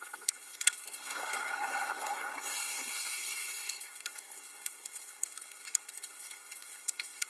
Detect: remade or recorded remade